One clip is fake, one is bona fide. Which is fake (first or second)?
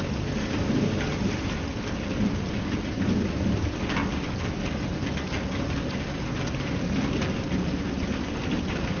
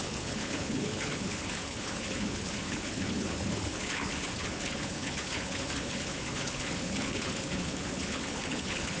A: second